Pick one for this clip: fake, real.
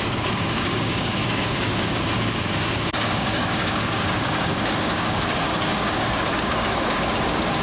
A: fake